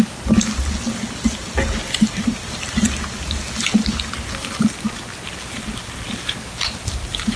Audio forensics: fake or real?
real